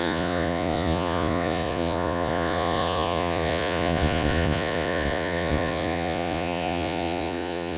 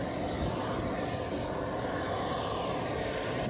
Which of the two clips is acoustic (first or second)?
second